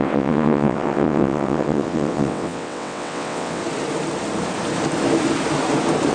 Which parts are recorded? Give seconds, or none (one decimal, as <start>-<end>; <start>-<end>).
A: 3.6-6.1